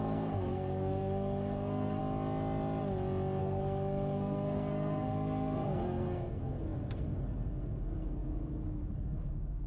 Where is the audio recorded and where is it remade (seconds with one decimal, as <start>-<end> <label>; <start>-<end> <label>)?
0.0-2.0 remade; 2.0-3.4 recorded; 3.4-9.7 remade